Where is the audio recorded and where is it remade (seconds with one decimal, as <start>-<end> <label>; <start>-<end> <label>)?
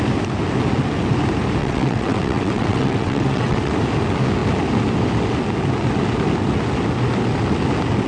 0.0-1.6 recorded; 1.6-3.7 remade; 3.7-8.1 recorded